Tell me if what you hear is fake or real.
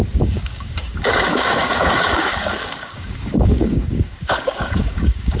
fake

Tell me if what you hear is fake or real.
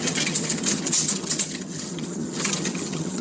fake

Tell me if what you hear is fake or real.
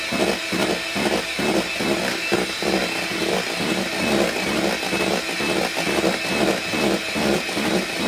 real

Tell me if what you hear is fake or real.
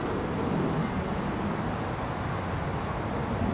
real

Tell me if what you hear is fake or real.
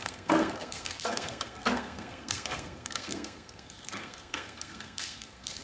fake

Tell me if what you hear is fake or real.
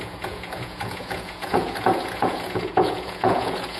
fake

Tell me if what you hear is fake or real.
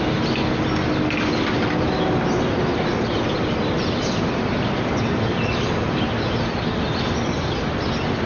real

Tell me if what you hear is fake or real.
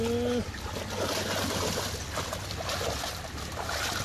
real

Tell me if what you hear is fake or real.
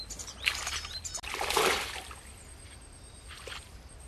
real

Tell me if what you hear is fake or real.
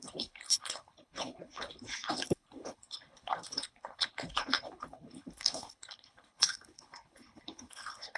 fake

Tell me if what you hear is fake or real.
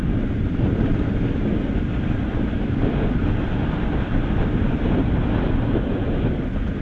real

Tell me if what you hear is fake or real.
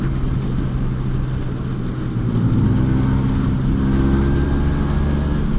real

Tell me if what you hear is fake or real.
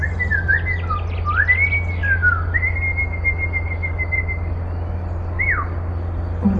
real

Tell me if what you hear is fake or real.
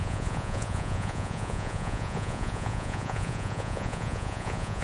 fake